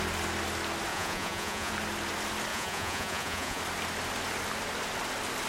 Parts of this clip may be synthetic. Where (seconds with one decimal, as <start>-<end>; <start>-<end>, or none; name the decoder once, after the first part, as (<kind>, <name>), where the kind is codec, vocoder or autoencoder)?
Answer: 0.9-1.7 (vocoder, Vocos); 2.5-3.6